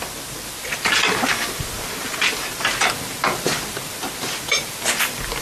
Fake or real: real